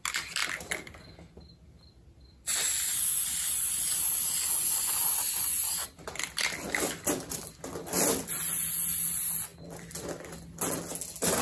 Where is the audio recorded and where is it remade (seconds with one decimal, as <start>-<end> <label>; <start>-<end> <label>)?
0.0-11.4 recorded